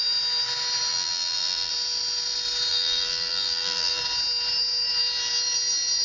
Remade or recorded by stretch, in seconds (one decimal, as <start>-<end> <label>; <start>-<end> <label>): 0.0-0.9 recorded; 0.9-1.7 remade; 1.7-2.7 recorded; 2.7-4.0 remade; 4.0-6.0 recorded